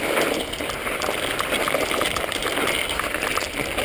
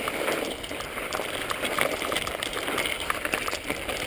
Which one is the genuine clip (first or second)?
first